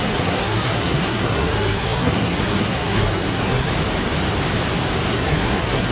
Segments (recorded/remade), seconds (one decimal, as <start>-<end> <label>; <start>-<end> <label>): 0.0-3.7 remade; 3.7-5.1 recorded; 5.1-5.9 remade